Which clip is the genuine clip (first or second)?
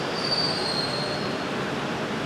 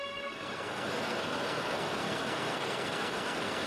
first